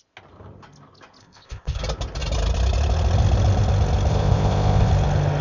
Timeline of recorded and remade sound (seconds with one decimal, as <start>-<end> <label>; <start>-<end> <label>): 0.0-1.2 recorded; 1.2-1.8 remade; 1.8-4.1 recorded; 4.1-4.9 remade; 4.9-5.4 recorded